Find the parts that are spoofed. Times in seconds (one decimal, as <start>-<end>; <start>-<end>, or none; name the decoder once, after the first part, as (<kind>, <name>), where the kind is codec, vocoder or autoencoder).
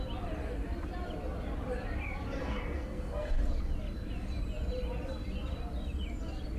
2.4-3.4 (codec, SNAC)